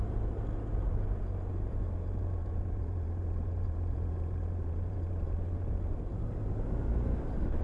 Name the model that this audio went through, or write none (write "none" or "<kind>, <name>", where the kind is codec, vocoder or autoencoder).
vocoder, BigVGAN v2